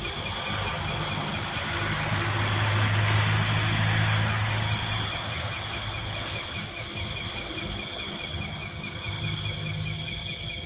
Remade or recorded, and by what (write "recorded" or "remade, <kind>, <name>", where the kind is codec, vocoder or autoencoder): recorded